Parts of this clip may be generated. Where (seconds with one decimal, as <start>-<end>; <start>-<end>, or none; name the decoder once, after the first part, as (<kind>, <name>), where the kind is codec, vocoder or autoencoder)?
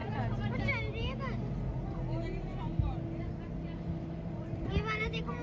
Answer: none